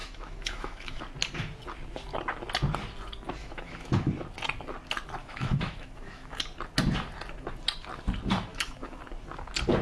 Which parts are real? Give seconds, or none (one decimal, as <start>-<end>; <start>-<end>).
1.0-3.4; 4.1-5.2; 6.4-8.5; 9.0-9.8